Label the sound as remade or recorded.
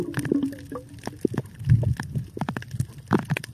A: recorded